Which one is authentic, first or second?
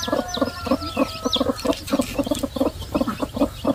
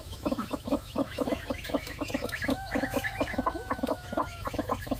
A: first